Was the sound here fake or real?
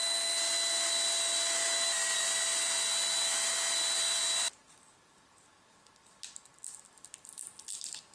real